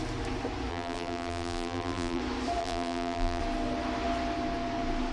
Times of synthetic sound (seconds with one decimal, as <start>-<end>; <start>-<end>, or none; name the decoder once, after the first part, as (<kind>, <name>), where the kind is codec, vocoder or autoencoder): 0.7-2.2 (vocoder, BigVGAN v2); 2.6-3.4